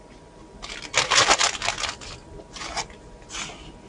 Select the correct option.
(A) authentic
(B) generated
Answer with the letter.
A